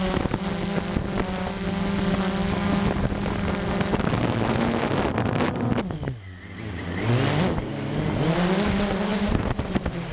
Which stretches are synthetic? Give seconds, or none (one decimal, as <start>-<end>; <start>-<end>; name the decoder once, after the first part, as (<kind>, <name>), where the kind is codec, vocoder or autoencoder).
9.1-10.1 (vocoder, BigVGAN v2)